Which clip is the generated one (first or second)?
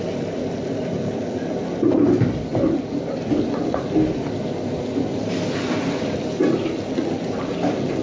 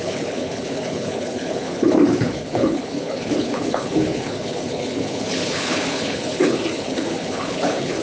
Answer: second